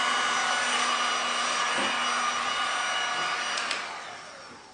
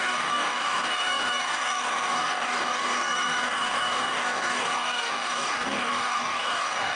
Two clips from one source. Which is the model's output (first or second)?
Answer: second